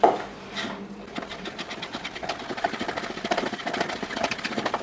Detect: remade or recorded recorded